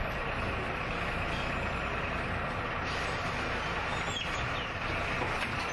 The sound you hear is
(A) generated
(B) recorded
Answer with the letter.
B